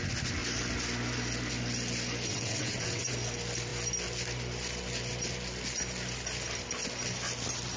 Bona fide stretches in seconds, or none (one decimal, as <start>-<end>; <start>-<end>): 0.0-2.3; 3.1-7.8